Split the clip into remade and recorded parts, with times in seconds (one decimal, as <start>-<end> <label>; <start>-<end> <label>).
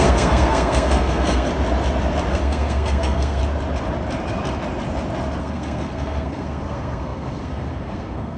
0.0-1.5 remade; 1.5-2.3 recorded; 2.3-3.4 remade; 3.4-5.4 recorded; 5.4-8.4 remade